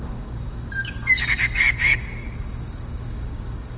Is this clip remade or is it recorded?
remade